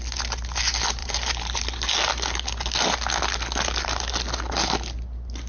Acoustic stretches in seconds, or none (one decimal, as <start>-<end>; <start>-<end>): 0.0-1.0; 1.6-5.5